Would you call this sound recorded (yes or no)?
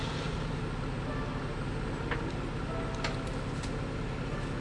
yes